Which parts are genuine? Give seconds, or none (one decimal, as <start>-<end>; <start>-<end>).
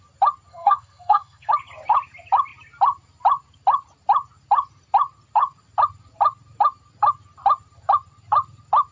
0.0-0.5; 1.5-8.9